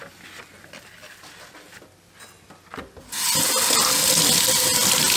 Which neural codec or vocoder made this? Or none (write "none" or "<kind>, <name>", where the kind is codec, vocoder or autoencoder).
none